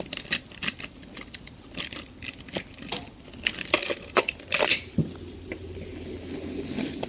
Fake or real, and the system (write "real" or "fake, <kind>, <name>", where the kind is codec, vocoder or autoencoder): real